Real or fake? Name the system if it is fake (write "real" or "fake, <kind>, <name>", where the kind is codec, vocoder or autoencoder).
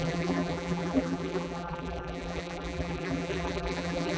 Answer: fake, vocoder, BigVGAN v2